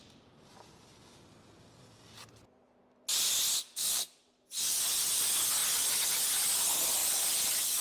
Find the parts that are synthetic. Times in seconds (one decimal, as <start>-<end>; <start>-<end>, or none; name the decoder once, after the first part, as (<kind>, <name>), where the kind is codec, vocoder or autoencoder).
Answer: 3.7-4.2 (codec, SNAC)